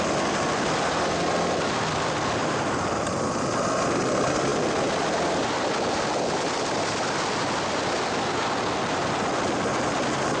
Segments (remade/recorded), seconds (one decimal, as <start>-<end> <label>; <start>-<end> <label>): 0.0-10.4 recorded